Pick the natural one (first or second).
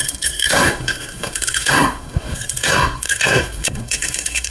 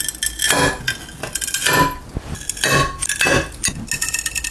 second